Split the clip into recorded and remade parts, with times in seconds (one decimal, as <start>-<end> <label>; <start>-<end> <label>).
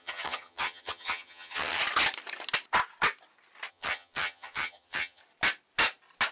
0.0-1.8 remade; 1.8-3.7 recorded; 3.7-5.2 remade; 5.2-6.3 recorded